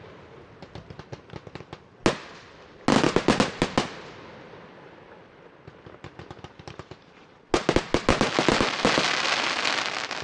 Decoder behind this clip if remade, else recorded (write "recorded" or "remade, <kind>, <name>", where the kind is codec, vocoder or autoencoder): recorded